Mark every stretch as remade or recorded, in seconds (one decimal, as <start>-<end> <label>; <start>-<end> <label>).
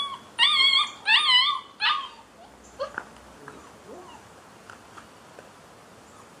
0.0-6.4 recorded